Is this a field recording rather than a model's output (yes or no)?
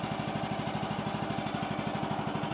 yes